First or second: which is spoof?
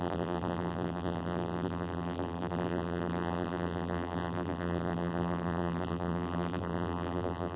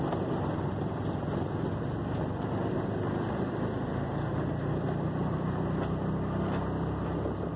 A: first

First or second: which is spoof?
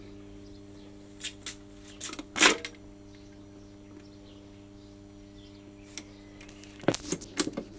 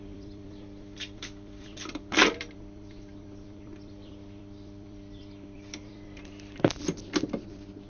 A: second